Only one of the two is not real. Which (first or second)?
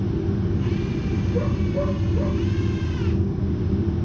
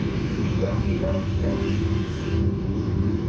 second